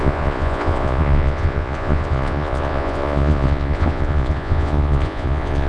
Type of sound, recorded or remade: remade